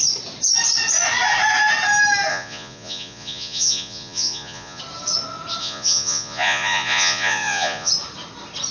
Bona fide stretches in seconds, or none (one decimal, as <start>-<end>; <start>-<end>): 0.0-2.3; 4.8-5.6; 7.9-8.7